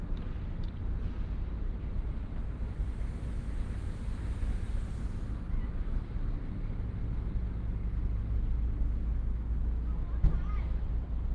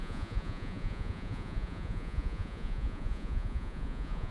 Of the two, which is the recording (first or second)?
first